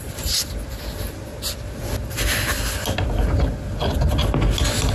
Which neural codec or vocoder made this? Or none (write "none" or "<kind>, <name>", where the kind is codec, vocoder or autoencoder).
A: none